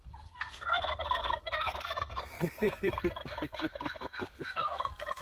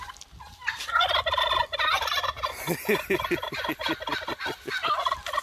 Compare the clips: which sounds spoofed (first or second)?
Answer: first